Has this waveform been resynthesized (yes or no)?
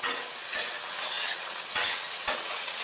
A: yes